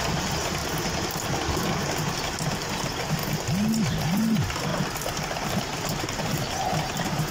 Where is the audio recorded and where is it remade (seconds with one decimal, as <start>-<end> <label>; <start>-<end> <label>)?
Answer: 0.0-0.6 remade; 0.6-2.5 recorded; 2.5-3.2 remade; 3.2-4.0 recorded; 4.0-4.7 remade; 4.7-5.6 recorded; 5.6-7.3 remade